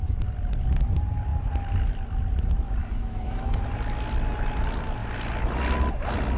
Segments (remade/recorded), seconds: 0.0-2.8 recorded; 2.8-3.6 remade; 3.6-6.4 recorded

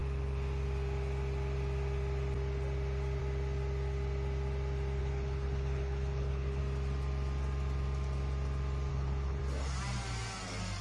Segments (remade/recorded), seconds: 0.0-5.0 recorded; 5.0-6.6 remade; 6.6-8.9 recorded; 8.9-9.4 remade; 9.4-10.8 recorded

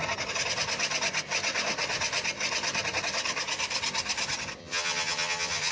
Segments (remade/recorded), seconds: 0.0-4.6 recorded; 4.6-5.7 remade

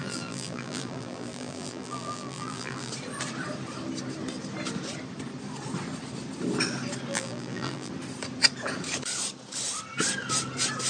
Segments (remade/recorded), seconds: 0.0-2.9 remade; 2.9-7.1 recorded; 7.1-7.9 remade; 7.9-10.9 recorded